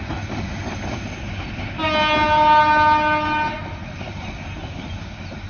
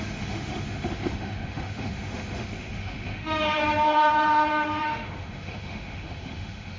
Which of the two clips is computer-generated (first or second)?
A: second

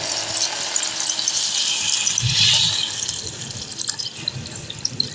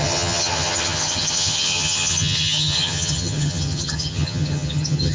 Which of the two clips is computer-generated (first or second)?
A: second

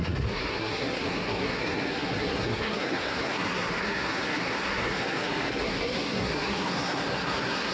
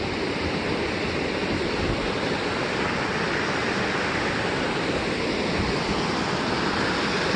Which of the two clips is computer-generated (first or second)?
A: first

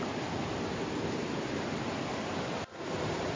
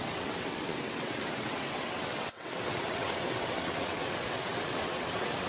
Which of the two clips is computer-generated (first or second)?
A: second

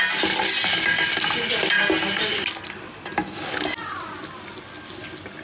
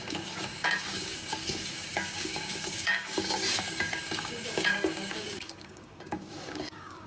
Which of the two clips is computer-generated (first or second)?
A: second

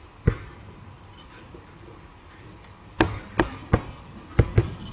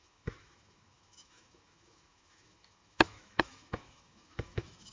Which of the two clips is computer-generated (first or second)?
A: second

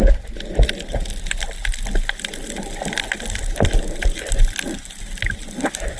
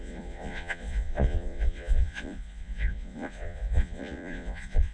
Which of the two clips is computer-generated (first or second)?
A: second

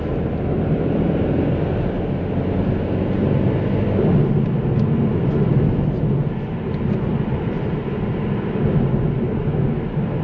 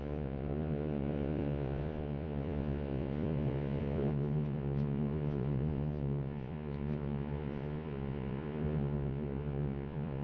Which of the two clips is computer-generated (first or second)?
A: second